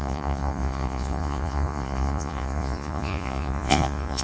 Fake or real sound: fake